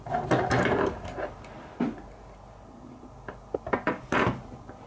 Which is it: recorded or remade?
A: recorded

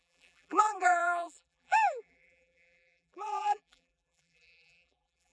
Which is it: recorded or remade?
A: remade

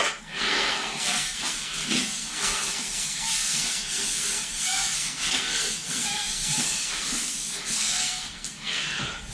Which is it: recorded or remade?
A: remade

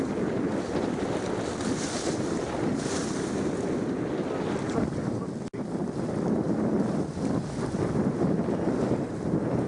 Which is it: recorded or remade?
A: recorded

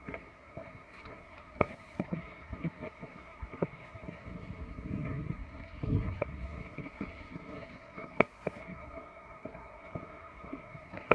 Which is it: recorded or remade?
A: remade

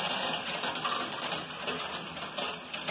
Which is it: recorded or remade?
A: recorded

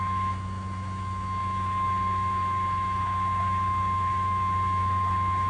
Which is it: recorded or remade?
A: remade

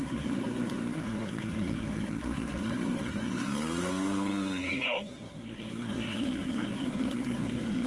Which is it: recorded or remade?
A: remade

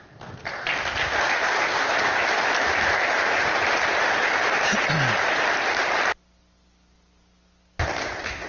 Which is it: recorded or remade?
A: recorded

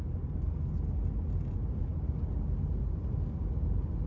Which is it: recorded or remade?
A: recorded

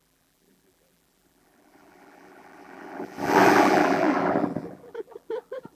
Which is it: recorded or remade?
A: remade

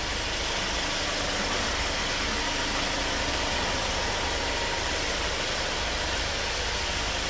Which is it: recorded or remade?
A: recorded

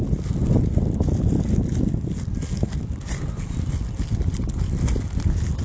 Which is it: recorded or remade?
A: recorded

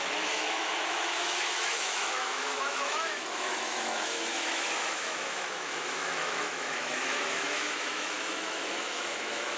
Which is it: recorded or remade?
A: remade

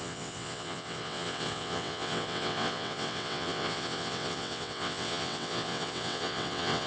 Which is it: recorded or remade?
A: remade